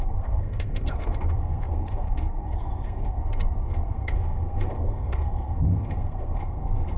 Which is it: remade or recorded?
remade